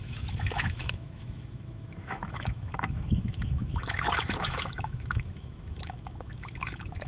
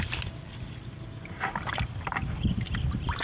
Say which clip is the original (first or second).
second